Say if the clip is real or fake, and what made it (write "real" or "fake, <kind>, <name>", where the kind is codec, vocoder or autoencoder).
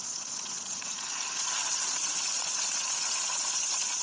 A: fake, vocoder, Vocos